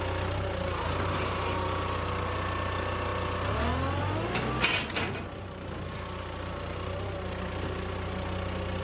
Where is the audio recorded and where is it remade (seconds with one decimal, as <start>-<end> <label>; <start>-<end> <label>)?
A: 0.0-8.8 recorded